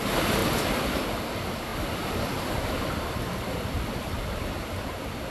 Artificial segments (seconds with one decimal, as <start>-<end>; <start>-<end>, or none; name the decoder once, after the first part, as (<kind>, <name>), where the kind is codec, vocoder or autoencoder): none